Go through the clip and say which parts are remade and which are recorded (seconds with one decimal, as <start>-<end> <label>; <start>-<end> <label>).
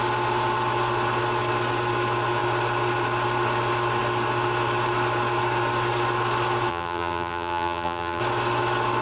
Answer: 0.0-6.7 recorded; 6.7-8.2 remade; 8.2-9.0 recorded